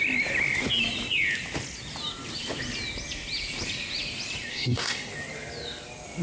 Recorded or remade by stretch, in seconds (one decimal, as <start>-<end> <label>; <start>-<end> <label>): 0.0-4.5 recorded; 4.5-5.1 remade; 5.1-6.2 recorded